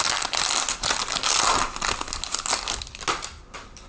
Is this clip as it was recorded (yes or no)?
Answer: yes